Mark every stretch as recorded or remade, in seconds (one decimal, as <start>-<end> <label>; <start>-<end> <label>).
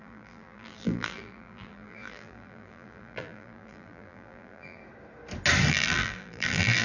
0.0-4.8 remade; 4.8-5.7 recorded; 5.7-6.8 remade